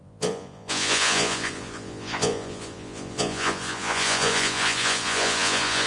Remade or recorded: remade